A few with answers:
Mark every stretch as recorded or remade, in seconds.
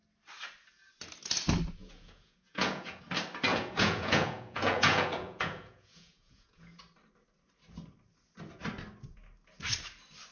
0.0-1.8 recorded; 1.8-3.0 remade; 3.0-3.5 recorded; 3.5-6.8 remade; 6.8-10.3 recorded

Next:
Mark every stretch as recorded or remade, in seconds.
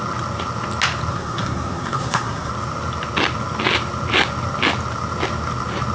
0.0-1.1 recorded; 1.1-2.5 remade; 2.5-5.9 recorded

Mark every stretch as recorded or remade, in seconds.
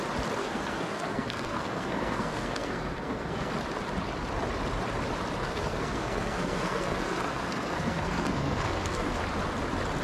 0.0-0.4 recorded; 0.4-3.5 remade; 3.5-5.4 recorded; 5.4-9.2 remade; 9.2-10.0 recorded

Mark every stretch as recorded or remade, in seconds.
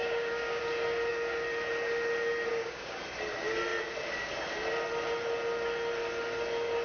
0.0-0.6 remade; 0.6-2.5 recorded; 2.5-3.0 remade; 3.0-6.8 recorded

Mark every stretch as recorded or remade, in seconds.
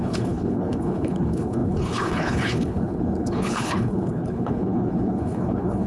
0.0-5.9 remade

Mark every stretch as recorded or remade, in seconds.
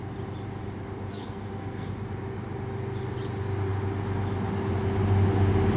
0.0-1.1 recorded; 1.1-1.9 remade; 1.9-5.8 recorded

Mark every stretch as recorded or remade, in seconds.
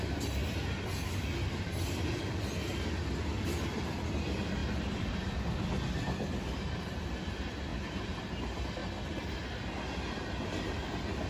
0.0-4.6 recorded; 4.6-5.4 remade; 5.4-11.3 recorded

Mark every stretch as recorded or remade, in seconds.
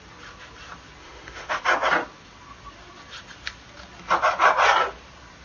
0.0-1.0 recorded; 1.0-1.6 remade; 1.6-5.4 recorded